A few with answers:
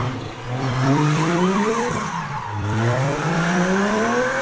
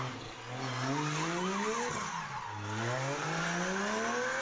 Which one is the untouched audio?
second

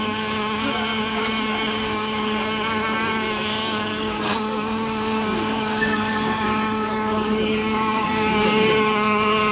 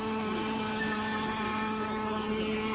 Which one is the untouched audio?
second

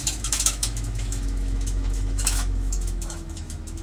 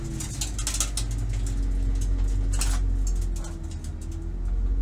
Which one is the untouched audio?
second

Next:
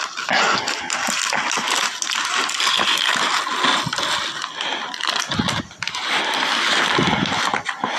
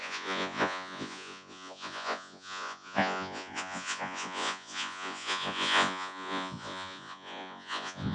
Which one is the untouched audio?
first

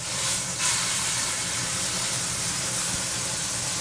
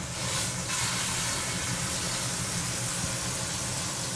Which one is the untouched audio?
second